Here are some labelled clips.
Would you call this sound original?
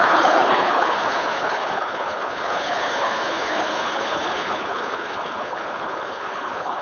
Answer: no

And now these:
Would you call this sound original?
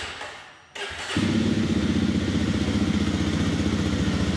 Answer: yes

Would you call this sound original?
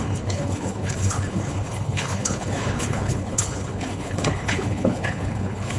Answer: no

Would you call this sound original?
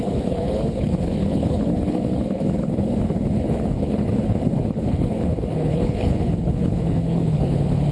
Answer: no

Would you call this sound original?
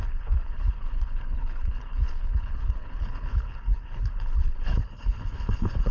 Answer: no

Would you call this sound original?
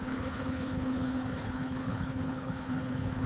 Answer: no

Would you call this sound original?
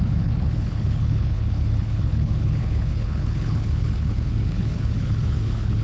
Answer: no